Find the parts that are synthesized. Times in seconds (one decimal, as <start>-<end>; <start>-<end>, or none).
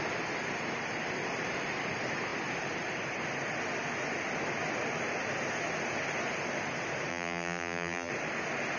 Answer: 7.1-8.1